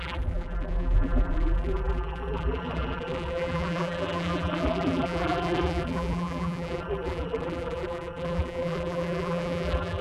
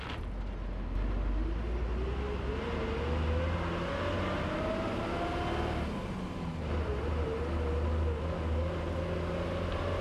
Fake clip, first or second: first